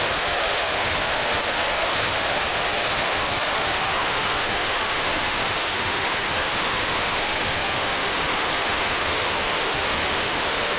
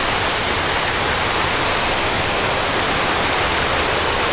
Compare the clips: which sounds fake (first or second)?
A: first